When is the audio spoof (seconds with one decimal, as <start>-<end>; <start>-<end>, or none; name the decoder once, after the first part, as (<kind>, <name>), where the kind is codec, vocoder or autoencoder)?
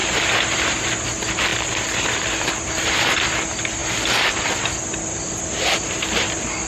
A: 1.5-2.9 (vocoder, BigVGAN v2)